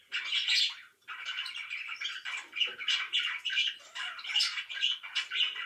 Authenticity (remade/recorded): recorded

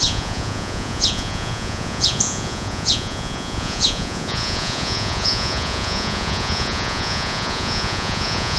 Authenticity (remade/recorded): remade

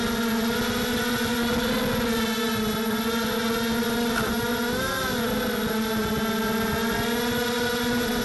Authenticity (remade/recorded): recorded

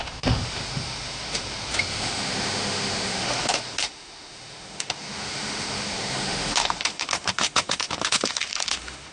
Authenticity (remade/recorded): remade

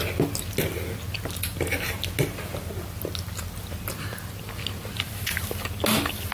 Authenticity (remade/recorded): recorded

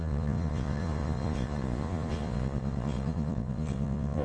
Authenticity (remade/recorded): remade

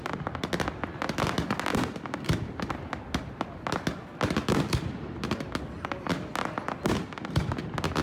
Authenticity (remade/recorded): recorded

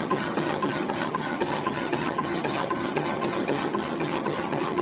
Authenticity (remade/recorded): remade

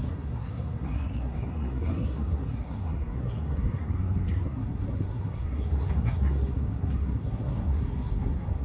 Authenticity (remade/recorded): remade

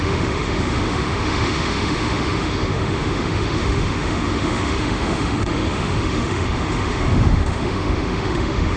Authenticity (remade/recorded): remade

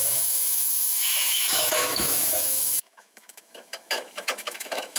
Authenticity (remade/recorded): remade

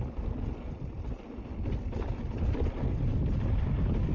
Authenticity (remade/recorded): recorded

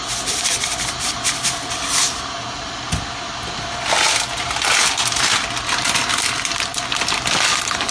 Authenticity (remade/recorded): recorded